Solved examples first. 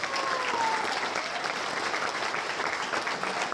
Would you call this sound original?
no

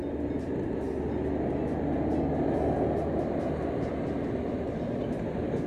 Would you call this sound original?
yes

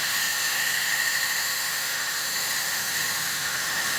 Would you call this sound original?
no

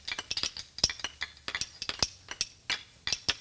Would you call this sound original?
yes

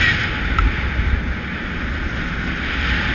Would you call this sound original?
yes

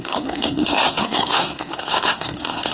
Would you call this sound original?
no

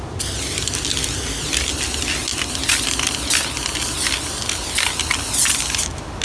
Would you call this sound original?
yes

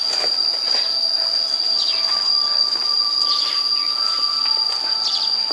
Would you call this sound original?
yes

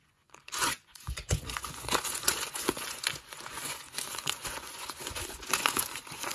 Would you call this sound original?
no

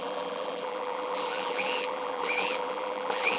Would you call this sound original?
no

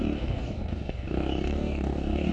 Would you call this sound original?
no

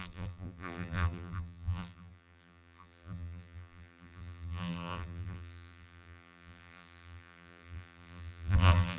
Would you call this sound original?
no